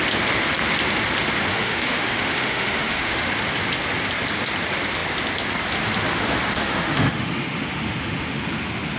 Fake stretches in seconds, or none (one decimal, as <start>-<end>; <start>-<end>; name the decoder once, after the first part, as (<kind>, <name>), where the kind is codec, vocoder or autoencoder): 1.5-3.3 (autoencoder, DAC-VAE); 6.6-8.4